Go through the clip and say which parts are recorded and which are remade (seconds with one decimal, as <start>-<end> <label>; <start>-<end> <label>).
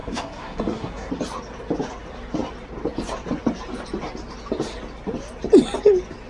0.0-1.1 remade; 1.1-6.3 recorded